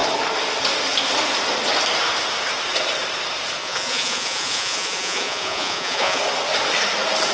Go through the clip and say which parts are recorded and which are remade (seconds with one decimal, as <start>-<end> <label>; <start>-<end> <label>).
0.0-3.6 recorded; 3.6-6.2 remade; 6.2-7.3 recorded